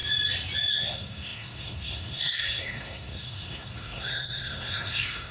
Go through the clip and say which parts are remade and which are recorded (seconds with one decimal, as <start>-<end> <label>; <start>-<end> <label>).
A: 0.0-0.7 recorded; 0.7-5.3 remade